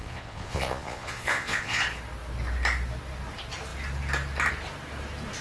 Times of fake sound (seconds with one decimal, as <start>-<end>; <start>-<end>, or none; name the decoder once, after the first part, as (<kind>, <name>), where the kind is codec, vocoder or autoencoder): 0.0-1.8 (vocoder, Vocos)